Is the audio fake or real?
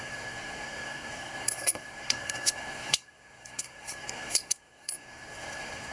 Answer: fake